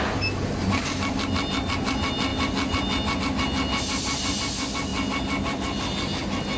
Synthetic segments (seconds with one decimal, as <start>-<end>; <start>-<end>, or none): none